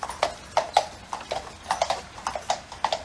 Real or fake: real